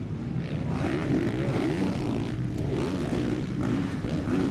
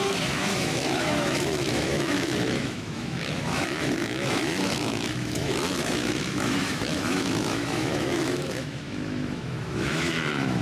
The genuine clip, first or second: first